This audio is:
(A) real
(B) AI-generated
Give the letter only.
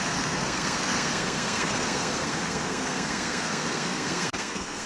B